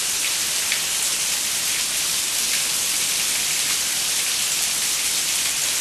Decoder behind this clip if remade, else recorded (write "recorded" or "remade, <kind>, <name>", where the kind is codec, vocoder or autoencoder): recorded